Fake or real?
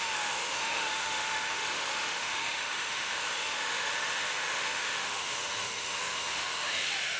fake